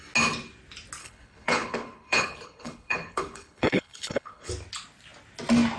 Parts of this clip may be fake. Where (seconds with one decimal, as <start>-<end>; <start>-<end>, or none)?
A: 1.0-4.5